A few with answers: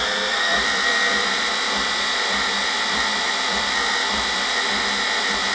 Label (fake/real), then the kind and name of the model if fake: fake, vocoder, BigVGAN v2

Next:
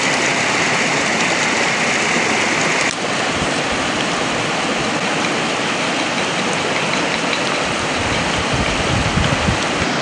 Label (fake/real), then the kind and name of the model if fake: real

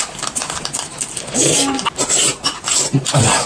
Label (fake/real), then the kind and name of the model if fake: real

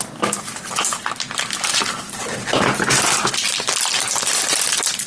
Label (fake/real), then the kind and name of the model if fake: real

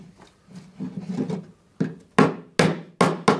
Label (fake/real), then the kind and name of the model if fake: real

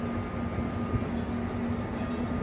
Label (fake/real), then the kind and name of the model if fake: real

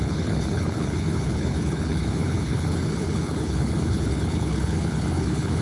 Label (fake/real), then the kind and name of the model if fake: fake, codec, HILCodec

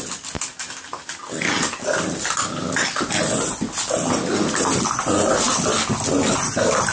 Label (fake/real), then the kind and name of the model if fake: real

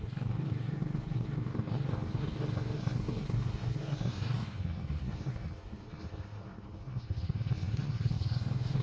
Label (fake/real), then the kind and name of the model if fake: fake, codec, SNAC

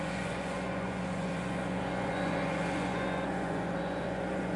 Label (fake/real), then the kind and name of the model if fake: fake, vocoder, Vocos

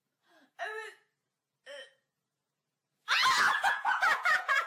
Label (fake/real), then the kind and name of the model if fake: fake, vocoder, Vocos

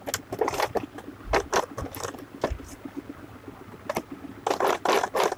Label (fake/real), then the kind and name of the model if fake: real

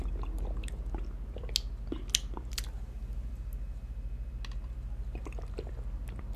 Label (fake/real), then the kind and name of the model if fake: real